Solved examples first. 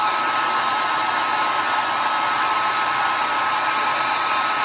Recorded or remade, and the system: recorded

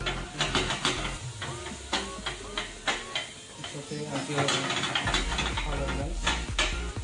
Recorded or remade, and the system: recorded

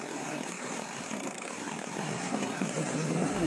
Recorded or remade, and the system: remade, codec, SNAC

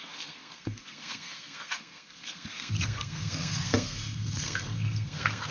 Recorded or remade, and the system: remade, codec, SNAC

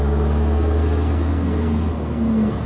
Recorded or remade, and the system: remade, codec, SNAC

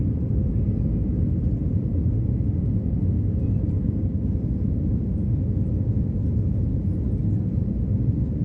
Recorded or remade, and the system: recorded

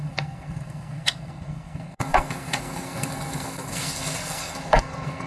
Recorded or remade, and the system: remade, codec, SNAC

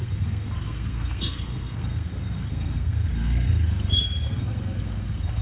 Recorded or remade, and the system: remade, codec, SNAC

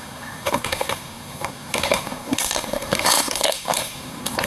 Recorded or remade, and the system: remade, codec, SNAC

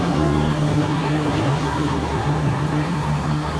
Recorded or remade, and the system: remade, codec, SNAC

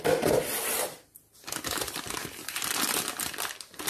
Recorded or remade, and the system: recorded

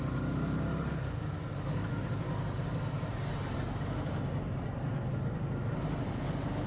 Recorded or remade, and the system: recorded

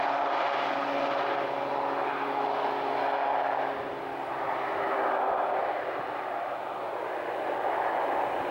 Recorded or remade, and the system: recorded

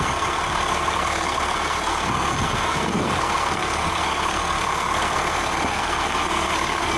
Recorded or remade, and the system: remade, codec, SNAC